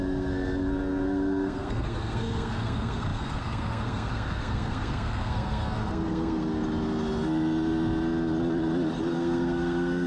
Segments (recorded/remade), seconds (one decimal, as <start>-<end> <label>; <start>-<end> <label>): 0.0-6.6 remade; 6.6-9.1 recorded; 9.1-10.1 remade